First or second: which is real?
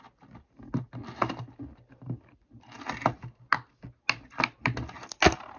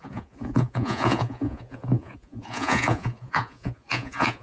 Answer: first